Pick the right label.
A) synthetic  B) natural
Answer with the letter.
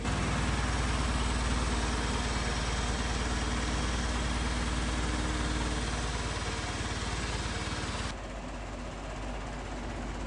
B